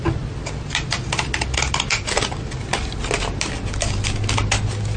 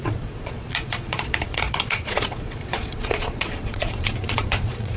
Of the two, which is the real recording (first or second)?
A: first